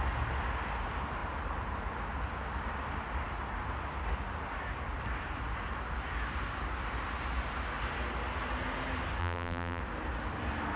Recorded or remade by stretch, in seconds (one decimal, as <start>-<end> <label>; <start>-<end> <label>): 0.0-9.2 recorded; 9.2-9.8 remade; 9.8-10.8 recorded